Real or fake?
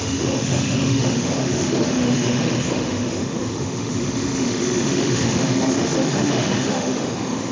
fake